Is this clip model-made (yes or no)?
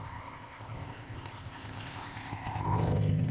yes